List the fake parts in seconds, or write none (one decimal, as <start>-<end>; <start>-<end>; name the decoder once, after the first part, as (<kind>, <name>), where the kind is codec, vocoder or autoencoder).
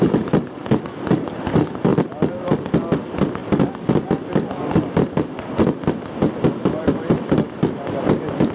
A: none